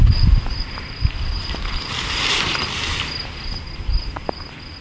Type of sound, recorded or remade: recorded